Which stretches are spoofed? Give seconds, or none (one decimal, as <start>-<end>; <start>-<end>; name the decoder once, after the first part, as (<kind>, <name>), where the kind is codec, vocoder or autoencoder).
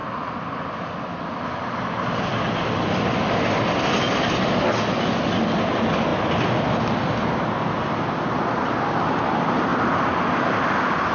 none